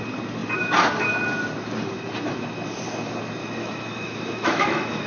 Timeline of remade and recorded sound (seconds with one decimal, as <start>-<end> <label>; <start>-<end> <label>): 0.0-3.4 recorded; 3.4-5.1 remade